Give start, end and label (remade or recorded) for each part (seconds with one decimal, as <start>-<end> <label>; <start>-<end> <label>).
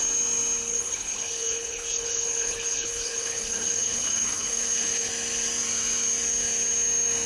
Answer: 0.0-0.7 recorded; 0.7-5.1 remade; 5.1-7.3 recorded